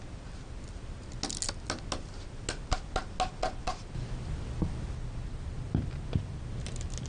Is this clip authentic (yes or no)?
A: yes